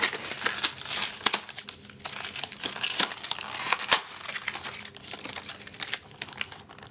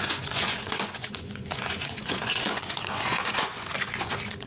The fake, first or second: second